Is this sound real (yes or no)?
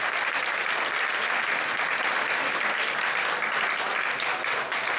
yes